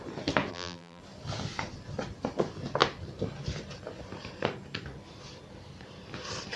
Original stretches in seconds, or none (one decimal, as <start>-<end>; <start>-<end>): 0.0-0.5; 1.0-6.6